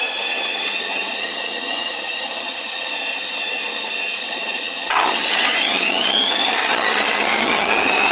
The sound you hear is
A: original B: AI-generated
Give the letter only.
B